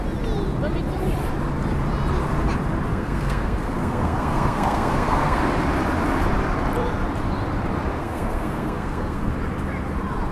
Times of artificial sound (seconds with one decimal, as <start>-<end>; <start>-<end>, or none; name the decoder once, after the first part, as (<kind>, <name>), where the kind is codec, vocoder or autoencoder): 2.9-5.4 (codec, SNAC); 7.9-9.3